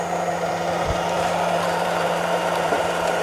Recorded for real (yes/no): no